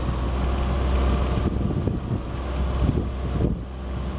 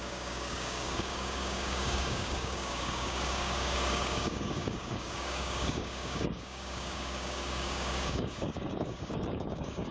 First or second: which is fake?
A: second